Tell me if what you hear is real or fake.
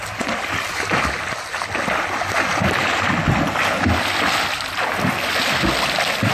real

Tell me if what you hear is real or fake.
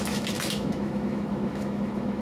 fake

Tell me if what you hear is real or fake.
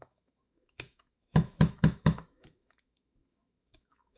fake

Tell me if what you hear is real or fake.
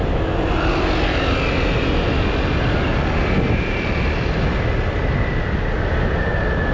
real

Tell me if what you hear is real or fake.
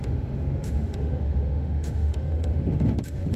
fake